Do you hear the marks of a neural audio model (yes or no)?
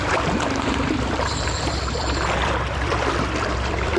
yes